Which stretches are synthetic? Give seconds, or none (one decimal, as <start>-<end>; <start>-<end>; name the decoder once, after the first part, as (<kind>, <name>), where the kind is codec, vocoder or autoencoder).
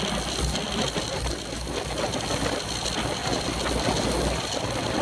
none